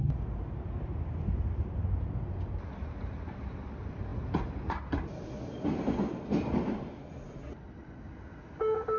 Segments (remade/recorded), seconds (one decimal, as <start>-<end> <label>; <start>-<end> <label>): 0.0-9.0 recorded